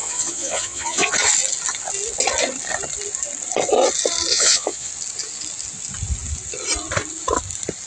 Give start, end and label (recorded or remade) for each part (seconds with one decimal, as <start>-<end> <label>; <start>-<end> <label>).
0.0-1.1 remade; 1.1-4.3 recorded; 4.3-4.9 remade; 4.9-7.9 recorded